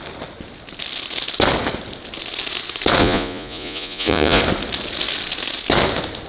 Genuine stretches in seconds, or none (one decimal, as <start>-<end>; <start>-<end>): 0.0-3.0; 4.4-6.3